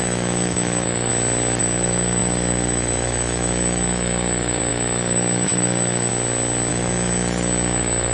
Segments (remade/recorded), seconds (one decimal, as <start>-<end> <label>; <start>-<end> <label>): 0.0-1.1 remade; 1.1-1.6 recorded; 1.6-6.1 remade; 6.1-6.7 recorded; 6.7-8.1 remade